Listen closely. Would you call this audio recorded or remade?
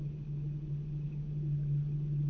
recorded